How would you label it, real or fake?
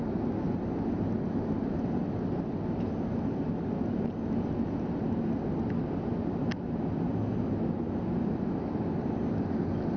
real